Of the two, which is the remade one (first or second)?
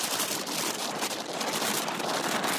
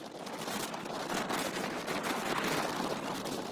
first